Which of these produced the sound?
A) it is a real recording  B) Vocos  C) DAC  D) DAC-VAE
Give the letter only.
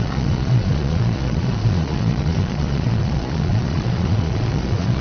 B